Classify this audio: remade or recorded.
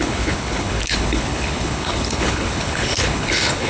remade